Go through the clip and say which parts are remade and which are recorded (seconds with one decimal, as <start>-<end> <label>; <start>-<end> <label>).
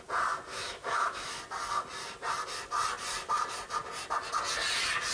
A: 0.0-0.5 recorded; 0.5-1.4 remade; 1.4-5.1 recorded